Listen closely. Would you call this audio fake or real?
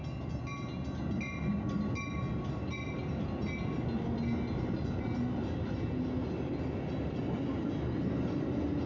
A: real